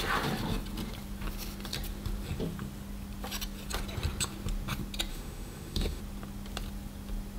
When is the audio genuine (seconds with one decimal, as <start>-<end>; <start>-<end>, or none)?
0.0-5.1; 6.0-7.4